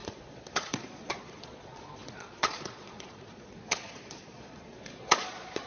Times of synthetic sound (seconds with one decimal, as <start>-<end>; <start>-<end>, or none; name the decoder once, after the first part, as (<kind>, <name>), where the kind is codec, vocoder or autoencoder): 0.0-5.7 (vocoder, Vocos)